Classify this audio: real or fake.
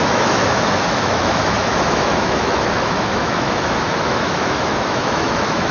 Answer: fake